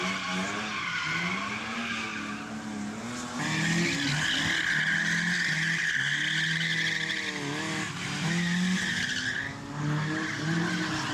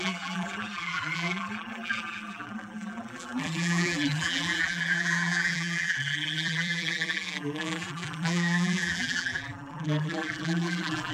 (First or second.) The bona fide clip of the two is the first